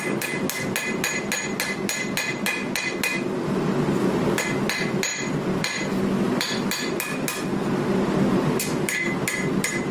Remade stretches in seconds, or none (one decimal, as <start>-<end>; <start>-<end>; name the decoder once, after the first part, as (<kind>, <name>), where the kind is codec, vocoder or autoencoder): none